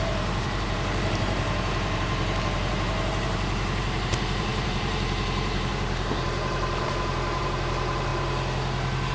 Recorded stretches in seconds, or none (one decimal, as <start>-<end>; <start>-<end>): 8.1-9.1